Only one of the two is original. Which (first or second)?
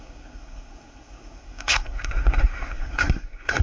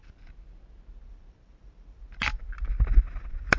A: second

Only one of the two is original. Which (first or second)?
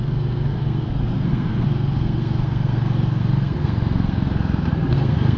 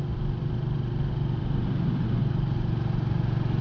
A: second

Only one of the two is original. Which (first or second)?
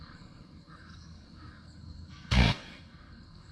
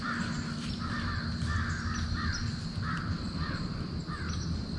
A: second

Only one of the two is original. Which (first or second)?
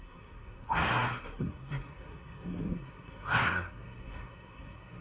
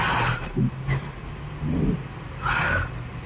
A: second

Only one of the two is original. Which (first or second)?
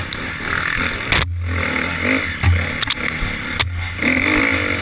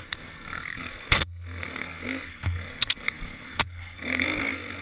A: first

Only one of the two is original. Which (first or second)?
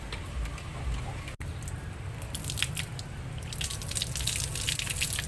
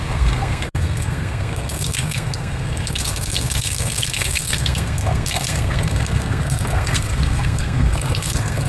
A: first